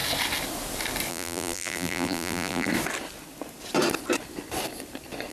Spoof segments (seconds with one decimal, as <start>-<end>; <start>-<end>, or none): 1.1-2.7